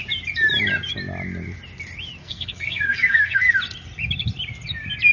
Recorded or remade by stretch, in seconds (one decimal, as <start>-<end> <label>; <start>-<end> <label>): 0.0-2.2 recorded; 2.2-3.5 remade; 3.5-5.1 recorded